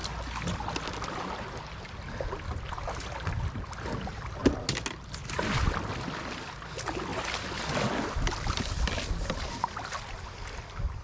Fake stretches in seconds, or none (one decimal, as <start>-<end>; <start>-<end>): none